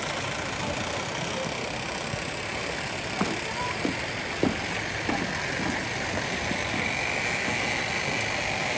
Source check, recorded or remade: recorded